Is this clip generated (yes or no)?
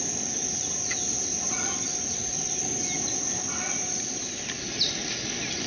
no